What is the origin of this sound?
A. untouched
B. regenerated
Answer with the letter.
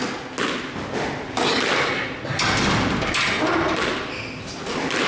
A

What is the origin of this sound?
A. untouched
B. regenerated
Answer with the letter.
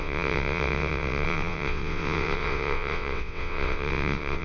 B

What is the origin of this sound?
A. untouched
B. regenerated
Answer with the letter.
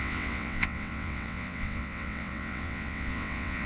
B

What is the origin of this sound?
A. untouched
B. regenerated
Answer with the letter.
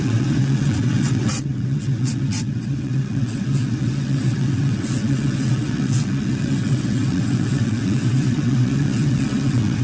B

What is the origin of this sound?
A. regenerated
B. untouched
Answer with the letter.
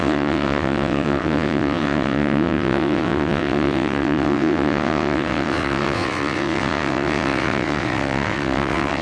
A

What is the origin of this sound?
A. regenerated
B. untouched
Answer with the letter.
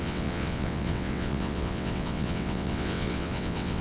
A